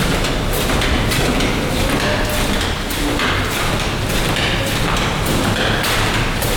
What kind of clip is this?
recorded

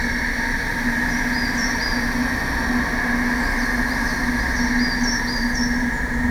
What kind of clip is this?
recorded